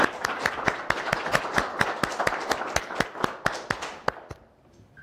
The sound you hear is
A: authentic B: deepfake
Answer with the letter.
A